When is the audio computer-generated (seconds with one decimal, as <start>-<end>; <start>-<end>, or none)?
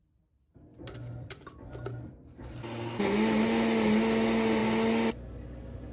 none